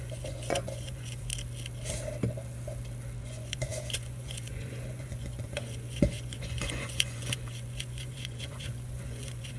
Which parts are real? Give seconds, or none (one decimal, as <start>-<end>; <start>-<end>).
1.3-3.2